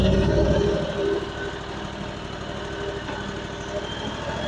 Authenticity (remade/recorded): recorded